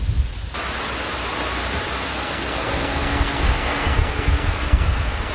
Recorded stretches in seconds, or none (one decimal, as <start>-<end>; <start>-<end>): 0.0-2.1